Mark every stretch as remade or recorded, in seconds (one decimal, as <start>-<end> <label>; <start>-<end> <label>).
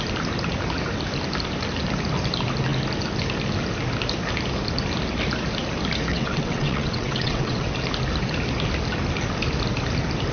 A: 0.0-6.1 recorded; 6.1-7.7 remade; 7.7-10.3 recorded